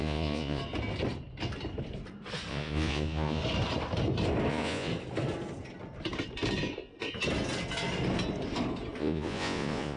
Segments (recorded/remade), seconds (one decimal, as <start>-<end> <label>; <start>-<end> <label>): 0.0-0.6 remade; 0.6-2.5 recorded; 2.5-3.4 remade; 3.4-4.5 recorded; 4.5-4.9 remade; 4.9-9.0 recorded; 9.0-10.0 remade